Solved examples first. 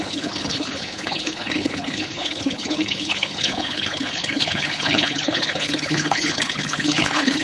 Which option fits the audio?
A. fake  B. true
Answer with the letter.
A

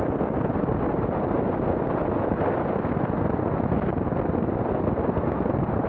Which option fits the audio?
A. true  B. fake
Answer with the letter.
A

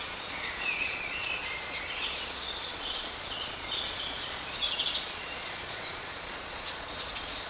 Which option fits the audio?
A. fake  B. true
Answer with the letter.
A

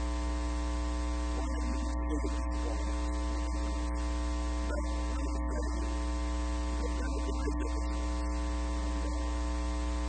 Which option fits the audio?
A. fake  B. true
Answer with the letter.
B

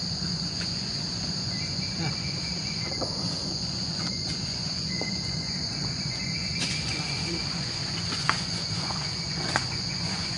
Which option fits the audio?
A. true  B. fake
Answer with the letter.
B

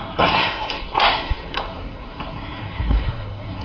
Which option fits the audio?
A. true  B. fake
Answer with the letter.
B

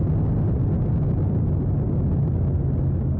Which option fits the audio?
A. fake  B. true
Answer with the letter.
B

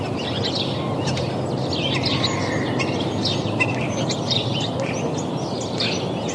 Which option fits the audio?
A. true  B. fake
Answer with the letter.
A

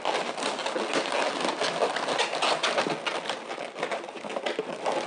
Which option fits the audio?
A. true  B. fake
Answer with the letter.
A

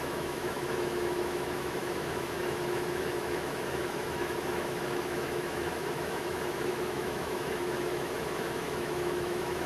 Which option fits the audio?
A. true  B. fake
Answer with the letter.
B